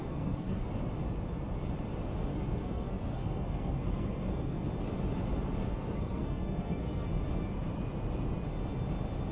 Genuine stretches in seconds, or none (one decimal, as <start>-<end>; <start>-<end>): 0.7-2.3; 4.7-5.6; 7.1-9.3